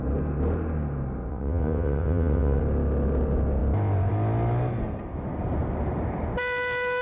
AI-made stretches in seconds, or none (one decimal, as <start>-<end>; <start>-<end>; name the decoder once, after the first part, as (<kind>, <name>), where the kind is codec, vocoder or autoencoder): 1.3-2.6 (vocoder, WaveNeXt)

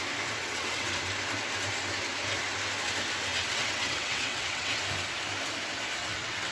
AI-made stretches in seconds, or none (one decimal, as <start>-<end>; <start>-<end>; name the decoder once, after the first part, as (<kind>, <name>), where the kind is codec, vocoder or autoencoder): 0.4-0.9 (vocoder, WaveNeXt); 3.3-4.8; 6.0-6.5

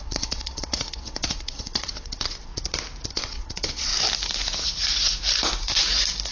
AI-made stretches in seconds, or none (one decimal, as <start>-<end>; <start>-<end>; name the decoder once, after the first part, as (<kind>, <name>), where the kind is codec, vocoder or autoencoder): 0.0-2.5 (vocoder, WaveNeXt); 3.1-3.9